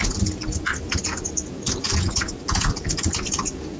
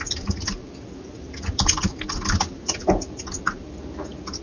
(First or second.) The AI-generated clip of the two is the first